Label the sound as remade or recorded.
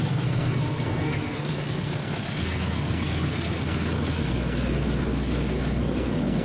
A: remade